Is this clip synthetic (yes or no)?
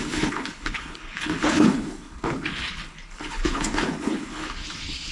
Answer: yes